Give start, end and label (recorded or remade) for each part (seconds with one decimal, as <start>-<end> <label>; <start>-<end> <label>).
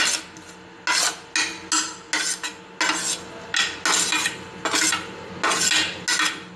0.0-6.6 recorded